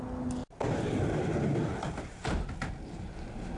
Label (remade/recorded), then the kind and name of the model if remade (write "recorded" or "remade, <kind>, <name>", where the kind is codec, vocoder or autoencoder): recorded